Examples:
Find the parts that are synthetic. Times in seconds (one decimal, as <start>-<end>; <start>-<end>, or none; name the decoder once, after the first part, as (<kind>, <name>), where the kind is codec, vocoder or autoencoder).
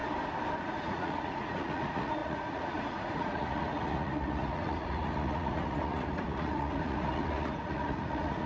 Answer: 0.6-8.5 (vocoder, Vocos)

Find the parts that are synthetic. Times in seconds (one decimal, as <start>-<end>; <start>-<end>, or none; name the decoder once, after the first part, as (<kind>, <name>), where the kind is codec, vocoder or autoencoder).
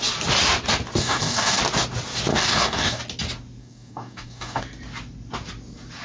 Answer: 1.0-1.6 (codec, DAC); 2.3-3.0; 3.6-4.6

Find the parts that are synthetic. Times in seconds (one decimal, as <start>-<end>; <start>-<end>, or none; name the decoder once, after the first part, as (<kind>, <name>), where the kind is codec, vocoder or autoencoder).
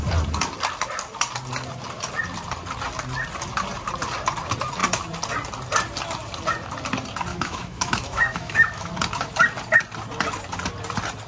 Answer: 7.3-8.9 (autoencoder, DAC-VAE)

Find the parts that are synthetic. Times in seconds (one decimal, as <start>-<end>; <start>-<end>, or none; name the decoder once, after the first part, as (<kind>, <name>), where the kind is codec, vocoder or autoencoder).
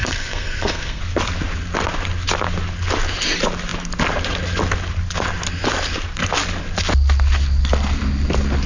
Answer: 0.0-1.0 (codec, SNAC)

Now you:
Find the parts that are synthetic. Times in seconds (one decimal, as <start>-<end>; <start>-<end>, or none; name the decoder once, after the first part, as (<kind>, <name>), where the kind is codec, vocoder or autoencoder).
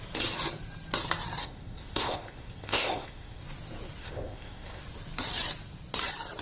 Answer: 1.4-3.4 (codec, ZipCodec); 4.0-4.8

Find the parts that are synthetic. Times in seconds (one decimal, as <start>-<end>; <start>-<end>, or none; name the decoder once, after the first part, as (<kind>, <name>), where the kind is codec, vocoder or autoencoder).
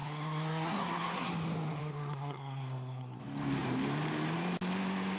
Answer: 0.0-1.3 (codec, SNAC); 1.8-3.2